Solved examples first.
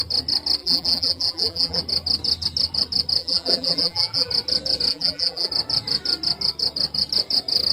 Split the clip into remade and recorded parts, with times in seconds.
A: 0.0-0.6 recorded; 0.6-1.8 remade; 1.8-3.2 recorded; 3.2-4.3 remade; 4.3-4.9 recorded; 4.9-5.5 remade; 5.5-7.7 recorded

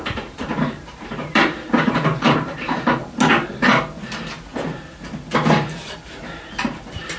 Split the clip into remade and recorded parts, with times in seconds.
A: 0.0-3.0 remade; 3.0-6.1 recorded; 6.1-7.2 remade

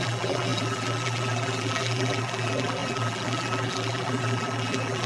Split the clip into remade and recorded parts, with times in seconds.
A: 0.0-5.1 remade

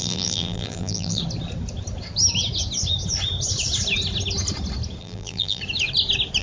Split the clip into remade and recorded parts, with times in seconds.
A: 0.0-1.2 remade; 1.2-5.0 recorded; 5.0-5.6 remade; 5.6-6.4 recorded

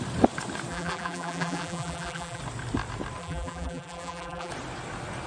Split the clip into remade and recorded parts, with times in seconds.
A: 0.0-0.7 recorded; 0.7-2.4 remade; 2.4-3.2 recorded; 3.2-4.5 remade; 4.5-5.3 recorded

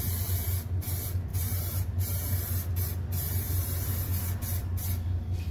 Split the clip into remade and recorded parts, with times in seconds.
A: 0.0-5.5 recorded

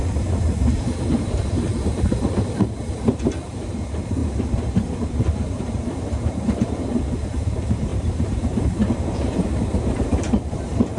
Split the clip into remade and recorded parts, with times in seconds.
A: 0.0-4.2 remade; 4.2-4.9 recorded; 4.9-11.0 remade